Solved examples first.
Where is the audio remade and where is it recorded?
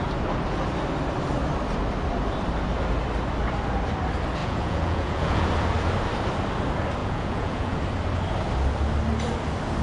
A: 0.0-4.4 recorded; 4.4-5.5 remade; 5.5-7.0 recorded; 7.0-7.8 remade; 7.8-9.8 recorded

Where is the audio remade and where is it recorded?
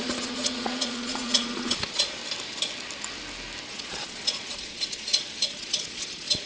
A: 0.0-2.2 remade; 2.2-3.7 recorded; 3.7-6.5 remade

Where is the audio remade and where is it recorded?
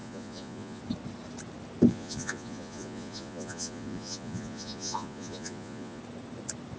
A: 0.0-0.8 remade; 0.8-1.9 recorded; 1.9-6.0 remade; 6.0-6.8 recorded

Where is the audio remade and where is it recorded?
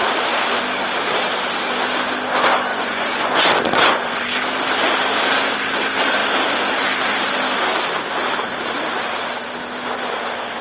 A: 0.0-2.7 recorded; 2.7-4.2 remade; 4.2-10.6 recorded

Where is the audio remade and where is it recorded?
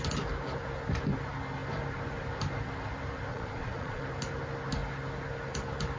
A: 0.0-3.3 recorded; 3.3-4.0 remade; 4.0-6.0 recorded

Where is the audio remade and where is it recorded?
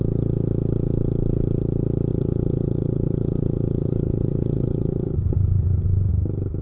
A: 0.0-2.1 recorded; 2.1-6.1 remade; 6.1-6.6 recorded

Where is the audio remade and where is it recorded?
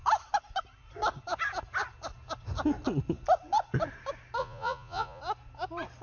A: 0.0-4.4 recorded; 4.4-5.2 remade; 5.2-6.0 recorded